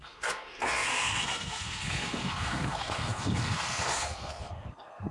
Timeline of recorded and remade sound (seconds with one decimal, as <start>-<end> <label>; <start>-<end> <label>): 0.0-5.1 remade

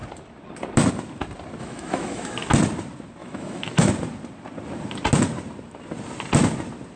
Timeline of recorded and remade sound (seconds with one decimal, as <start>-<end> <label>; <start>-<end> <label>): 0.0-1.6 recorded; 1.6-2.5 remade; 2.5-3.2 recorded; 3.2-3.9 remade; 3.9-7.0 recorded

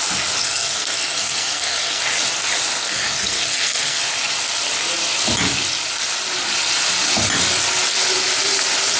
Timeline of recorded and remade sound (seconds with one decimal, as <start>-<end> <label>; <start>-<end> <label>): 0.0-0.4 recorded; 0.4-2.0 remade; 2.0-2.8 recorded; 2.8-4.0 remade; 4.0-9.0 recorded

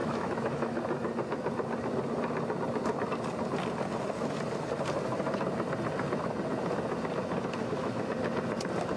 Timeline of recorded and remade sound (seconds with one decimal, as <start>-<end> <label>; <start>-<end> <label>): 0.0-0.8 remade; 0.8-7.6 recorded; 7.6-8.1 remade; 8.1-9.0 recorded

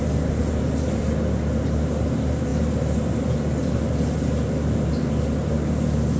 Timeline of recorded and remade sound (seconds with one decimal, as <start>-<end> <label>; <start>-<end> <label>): 0.0-6.2 recorded

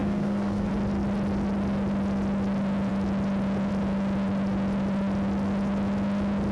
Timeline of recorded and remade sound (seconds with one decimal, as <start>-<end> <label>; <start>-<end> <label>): 0.0-0.7 remade; 0.7-6.5 recorded

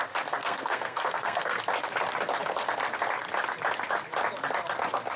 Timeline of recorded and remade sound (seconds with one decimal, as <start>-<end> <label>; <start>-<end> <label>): 0.0-0.4 recorded; 0.4-1.6 remade; 1.6-5.2 recorded

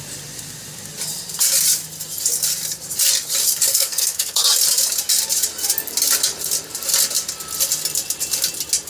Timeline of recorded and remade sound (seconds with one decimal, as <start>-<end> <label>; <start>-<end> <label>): 0.0-3.7 recorded; 3.7-4.4 remade; 4.4-8.9 recorded